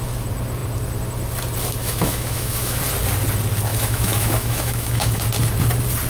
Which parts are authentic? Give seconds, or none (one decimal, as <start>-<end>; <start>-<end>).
0.0-1.8; 2.8-3.7; 5.2-6.1